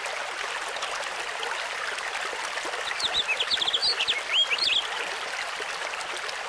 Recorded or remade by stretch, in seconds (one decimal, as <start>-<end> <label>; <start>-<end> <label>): 0.0-6.5 recorded